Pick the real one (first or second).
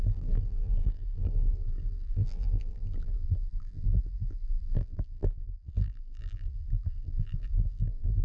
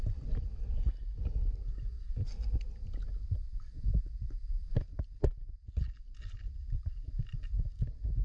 second